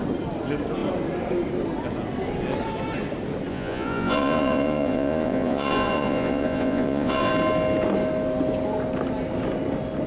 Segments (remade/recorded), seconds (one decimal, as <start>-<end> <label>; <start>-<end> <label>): 0.0-3.5 recorded; 3.5-7.3 remade; 7.3-10.1 recorded